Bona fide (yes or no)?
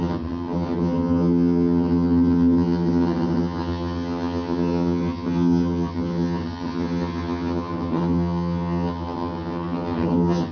no